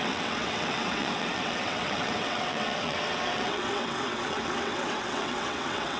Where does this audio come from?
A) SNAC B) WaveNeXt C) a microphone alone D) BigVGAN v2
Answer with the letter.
B